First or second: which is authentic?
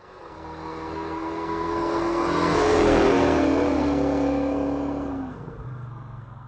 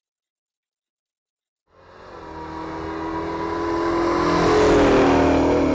second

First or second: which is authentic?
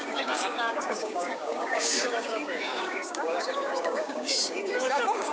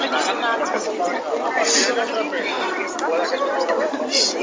second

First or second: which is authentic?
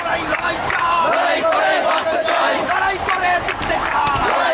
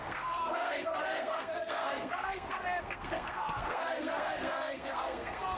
first